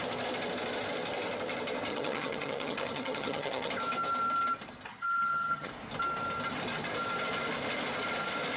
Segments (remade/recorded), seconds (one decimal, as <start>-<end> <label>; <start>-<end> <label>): 0.0-1.9 recorded; 1.9-3.7 remade; 3.7-4.9 recorded; 4.9-5.7 remade; 5.7-8.6 recorded